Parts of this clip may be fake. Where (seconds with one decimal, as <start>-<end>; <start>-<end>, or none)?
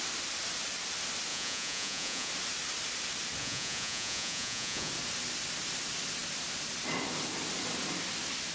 1.3-2.3; 3.4-4.9